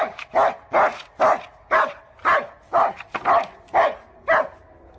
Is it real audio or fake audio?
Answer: real